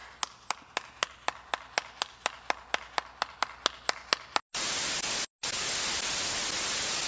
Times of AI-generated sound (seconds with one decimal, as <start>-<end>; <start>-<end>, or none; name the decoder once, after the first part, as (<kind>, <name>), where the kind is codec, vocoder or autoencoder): none